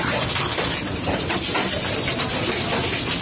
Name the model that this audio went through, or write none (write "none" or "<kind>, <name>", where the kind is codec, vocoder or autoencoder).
none